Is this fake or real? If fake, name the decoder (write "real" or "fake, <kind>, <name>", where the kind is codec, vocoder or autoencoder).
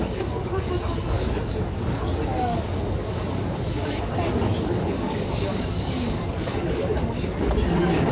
fake, codec, DAC